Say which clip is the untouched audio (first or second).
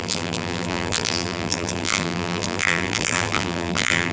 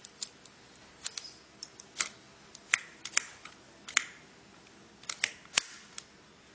second